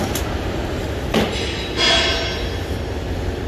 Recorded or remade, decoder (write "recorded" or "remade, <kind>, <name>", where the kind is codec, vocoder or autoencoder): recorded